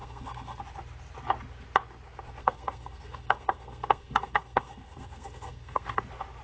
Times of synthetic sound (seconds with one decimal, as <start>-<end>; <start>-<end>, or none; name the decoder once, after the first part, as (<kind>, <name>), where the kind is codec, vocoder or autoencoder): 0.0-0.6 (codec, SNAC); 2.4-6.0